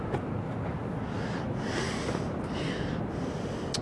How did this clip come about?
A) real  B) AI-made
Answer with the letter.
A